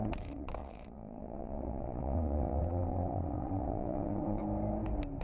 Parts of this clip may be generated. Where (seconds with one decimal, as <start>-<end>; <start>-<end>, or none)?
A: 0.0-4.4